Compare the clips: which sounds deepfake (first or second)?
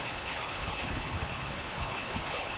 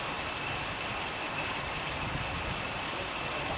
first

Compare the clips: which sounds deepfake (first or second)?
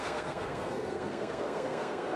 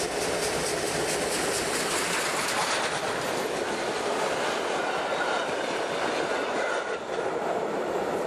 first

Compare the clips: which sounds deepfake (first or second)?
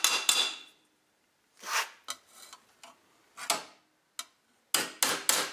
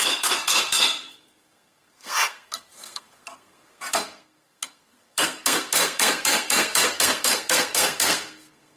second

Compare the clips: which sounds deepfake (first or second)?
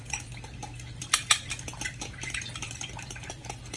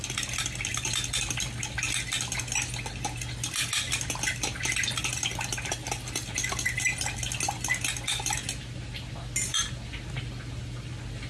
first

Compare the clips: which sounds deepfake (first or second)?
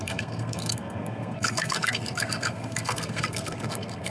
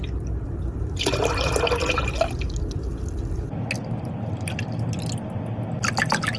first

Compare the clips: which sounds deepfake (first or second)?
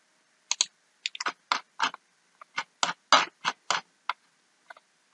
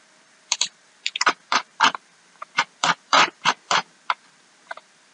second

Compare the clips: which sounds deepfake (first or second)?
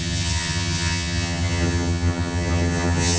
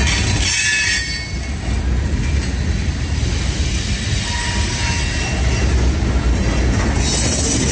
first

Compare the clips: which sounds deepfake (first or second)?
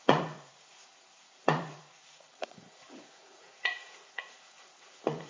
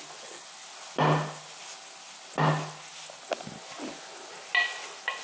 first